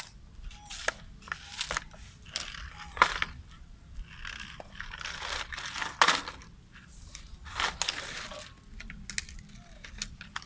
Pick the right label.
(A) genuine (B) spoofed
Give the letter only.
A